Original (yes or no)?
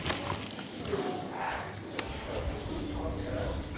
yes